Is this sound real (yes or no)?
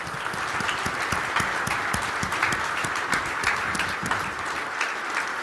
yes